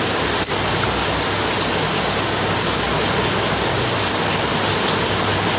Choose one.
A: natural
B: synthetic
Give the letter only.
A